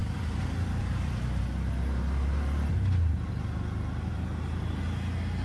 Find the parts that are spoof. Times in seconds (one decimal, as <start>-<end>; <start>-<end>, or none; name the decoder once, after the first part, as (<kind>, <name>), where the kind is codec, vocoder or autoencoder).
0.0-1.4 (vocoder, BigVGAN v2); 4.1-4.6